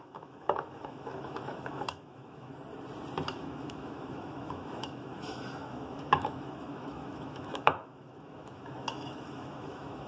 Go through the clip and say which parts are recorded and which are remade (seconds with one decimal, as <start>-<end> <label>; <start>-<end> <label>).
0.0-2.5 remade; 2.5-3.3 recorded; 3.3-10.1 remade

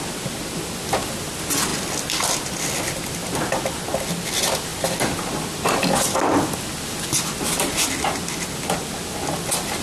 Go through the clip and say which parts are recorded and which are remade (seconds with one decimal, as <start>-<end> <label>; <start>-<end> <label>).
0.0-9.8 recorded

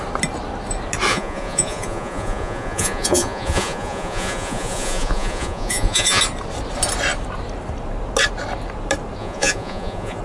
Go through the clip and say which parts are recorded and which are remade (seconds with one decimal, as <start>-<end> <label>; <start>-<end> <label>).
0.0-1.1 recorded; 1.1-6.2 remade; 6.2-9.2 recorded; 9.2-10.2 remade